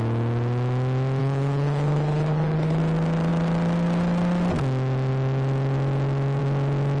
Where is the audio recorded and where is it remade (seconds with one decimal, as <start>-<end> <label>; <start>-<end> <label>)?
0.0-1.2 recorded; 1.2-2.8 remade; 2.8-7.0 recorded